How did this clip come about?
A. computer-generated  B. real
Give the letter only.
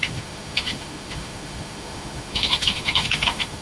A